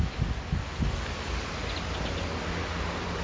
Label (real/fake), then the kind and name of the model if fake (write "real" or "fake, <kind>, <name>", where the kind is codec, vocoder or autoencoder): real